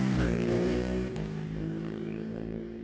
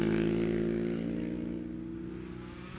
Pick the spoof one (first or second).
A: first